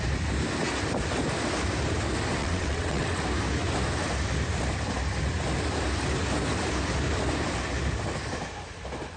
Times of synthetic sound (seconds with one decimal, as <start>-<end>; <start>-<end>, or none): 2.4-3.2